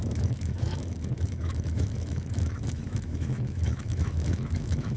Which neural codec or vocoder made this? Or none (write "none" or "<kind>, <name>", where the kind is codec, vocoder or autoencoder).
autoencoder, DAC-VAE